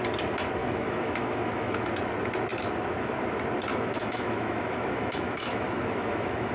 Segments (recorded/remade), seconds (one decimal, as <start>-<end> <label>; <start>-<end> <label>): 0.0-0.6 recorded; 0.6-1.9 remade; 1.9-3.7 recorded; 3.7-6.5 remade